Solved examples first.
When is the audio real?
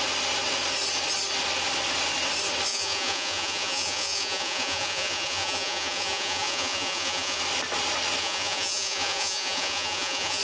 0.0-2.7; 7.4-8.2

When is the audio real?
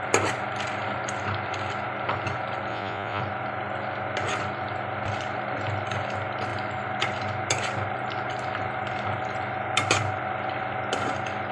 0.0-2.7; 3.2-11.5